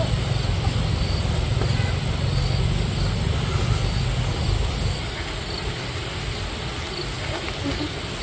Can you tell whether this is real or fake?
real